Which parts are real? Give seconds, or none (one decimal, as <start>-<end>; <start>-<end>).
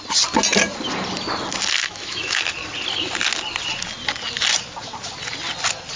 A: 0.0-1.8; 2.4-6.0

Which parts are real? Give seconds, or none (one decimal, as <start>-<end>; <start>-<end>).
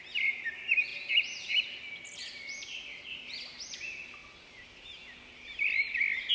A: 0.0-6.3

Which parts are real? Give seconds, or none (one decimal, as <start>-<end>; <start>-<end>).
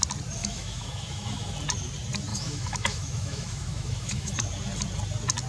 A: 0.0-0.4; 1.5-2.3; 4.4-5.5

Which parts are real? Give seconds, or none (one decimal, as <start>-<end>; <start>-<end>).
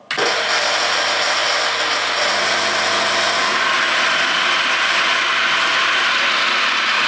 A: 0.0-7.1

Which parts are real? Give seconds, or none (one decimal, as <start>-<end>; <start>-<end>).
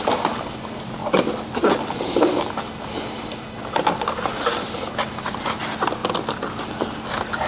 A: 0.0-7.5